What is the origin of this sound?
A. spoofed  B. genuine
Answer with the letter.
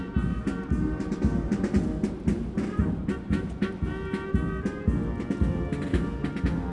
B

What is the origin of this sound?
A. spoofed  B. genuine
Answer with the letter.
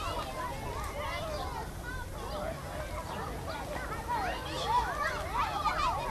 B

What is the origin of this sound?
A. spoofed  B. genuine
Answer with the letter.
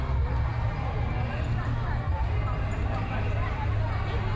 B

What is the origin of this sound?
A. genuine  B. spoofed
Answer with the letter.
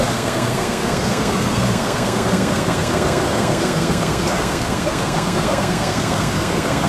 B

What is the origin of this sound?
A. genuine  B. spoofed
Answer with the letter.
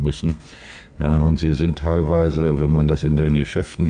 B